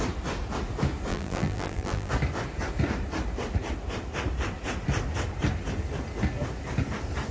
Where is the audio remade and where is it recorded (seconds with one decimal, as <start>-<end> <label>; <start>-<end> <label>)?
0.0-1.1 recorded; 1.1-2.1 remade; 2.1-7.3 recorded